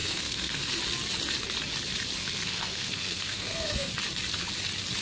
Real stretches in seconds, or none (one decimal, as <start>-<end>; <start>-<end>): 0.8-2.2; 3.9-5.0